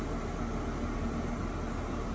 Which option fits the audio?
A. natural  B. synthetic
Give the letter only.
A